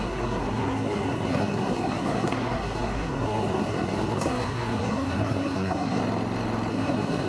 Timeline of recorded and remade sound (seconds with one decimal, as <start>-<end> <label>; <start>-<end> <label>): 0.0-6.0 remade; 6.0-6.7 recorded; 6.7-7.3 remade